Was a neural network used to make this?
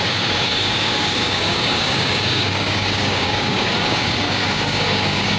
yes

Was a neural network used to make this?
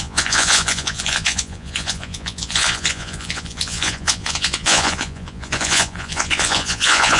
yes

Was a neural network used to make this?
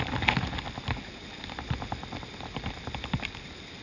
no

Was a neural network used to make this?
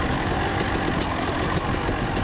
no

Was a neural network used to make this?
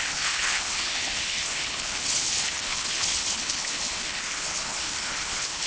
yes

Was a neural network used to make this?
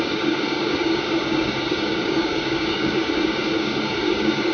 yes